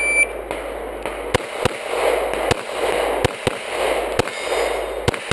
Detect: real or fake real